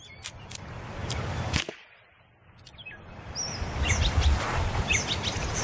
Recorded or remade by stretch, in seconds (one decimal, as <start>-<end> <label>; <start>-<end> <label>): 0.0-5.6 recorded